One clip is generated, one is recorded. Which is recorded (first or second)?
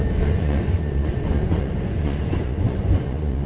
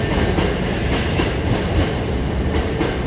second